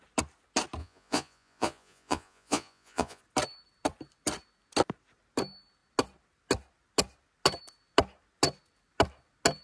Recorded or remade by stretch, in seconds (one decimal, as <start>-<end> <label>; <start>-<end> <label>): 0.0-0.8 recorded; 0.8-3.2 remade; 3.2-9.6 recorded